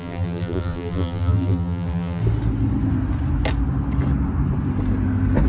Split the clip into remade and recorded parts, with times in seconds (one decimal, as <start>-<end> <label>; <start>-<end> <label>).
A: 0.0-2.2 remade; 2.2-5.5 recorded